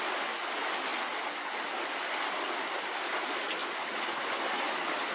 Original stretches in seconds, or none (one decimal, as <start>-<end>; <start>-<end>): 0.0-5.1